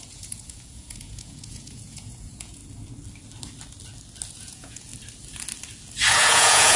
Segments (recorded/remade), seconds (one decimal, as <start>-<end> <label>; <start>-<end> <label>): 0.0-2.6 remade; 2.6-4.3 recorded; 4.3-4.9 remade; 4.9-6.1 recorded; 6.1-6.8 remade